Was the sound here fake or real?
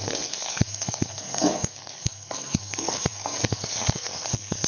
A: fake